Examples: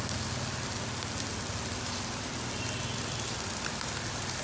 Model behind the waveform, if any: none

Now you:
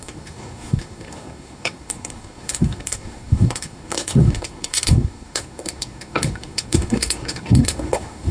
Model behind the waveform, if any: codec, SNAC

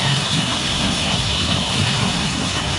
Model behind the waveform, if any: codec, SNAC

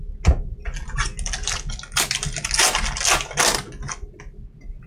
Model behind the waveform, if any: none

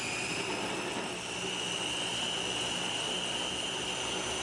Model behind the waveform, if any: none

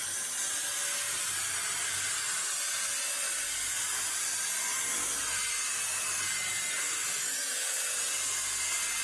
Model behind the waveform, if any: none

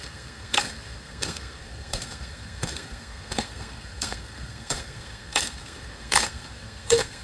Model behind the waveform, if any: codec, SNAC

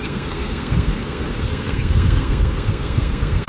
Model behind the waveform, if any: codec, SNAC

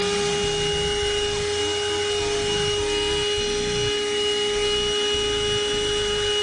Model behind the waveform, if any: none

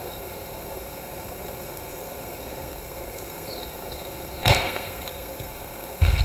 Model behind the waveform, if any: codec, SNAC